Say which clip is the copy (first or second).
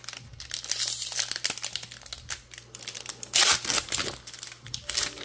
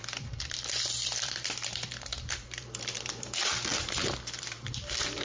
second